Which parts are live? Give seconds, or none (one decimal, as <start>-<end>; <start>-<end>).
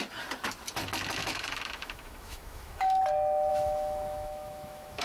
0.0-1.2; 3.0-3.5